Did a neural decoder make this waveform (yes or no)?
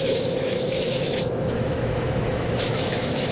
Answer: yes